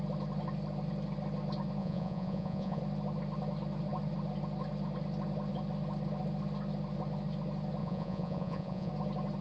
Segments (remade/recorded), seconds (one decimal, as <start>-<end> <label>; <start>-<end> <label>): 0.0-1.8 recorded; 1.8-2.8 remade; 2.8-7.8 recorded; 7.8-8.9 remade; 8.9-9.4 recorded